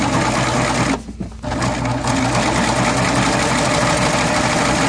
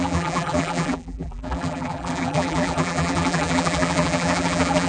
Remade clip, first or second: second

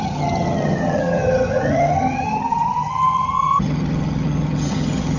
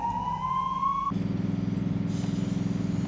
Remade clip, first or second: first